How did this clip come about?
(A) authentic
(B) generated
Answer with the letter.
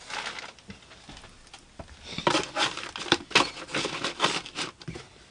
A